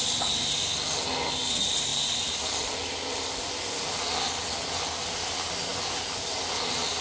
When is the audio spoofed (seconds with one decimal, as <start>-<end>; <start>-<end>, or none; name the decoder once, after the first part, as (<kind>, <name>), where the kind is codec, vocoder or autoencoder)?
none